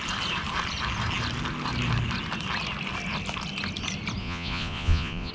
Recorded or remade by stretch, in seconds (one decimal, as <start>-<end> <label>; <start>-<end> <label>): 0.0-4.2 recorded; 4.2-5.3 remade